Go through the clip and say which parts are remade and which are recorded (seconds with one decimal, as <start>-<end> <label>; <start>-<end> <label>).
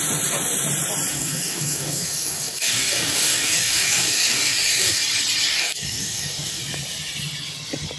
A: 0.0-1.1 recorded; 1.1-5.0 remade; 5.0-5.5 recorded; 5.5-6.6 remade; 6.6-8.0 recorded